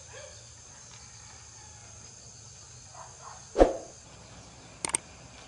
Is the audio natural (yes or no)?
yes